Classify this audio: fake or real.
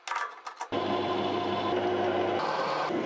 real